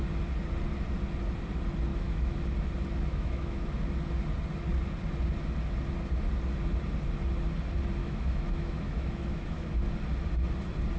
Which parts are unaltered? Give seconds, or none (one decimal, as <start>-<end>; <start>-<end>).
0.0-1.9; 2.4-3.1; 3.7-8.0; 9.7-11.0